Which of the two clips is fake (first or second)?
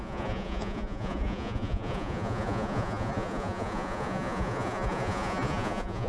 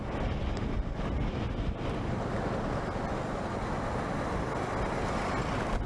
first